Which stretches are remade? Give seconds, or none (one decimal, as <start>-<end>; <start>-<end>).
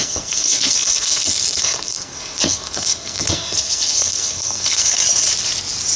0.0-5.0